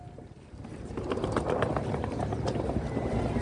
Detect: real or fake fake